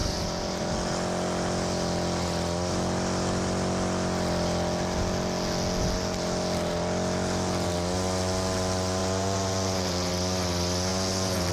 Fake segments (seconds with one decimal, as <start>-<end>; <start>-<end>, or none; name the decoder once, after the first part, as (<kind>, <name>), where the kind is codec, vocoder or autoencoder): 0.0-0.6 (vocoder, Vocos); 9.0-10.1; 10.9-11.5